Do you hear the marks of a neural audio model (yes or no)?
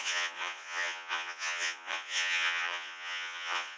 yes